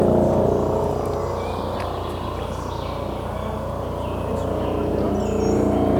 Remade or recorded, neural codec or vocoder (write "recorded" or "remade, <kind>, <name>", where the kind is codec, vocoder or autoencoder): recorded